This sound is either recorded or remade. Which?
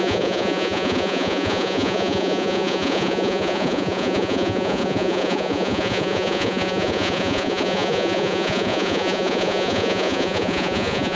remade